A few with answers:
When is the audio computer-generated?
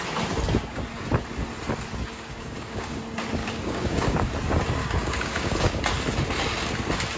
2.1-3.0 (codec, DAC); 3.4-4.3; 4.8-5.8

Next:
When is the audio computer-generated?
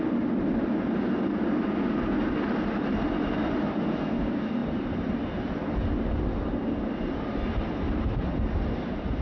none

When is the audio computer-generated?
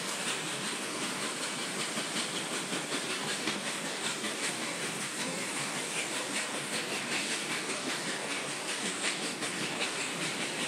0.0-1.2 (codec, DAC); 3.1-10.1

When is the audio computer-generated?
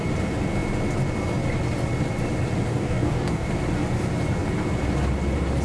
2.7-3.5 (codec, DAC)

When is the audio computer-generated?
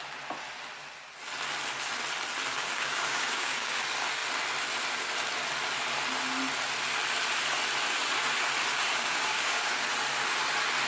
2.5-3.8 (codec, DAC); 8.7-9.9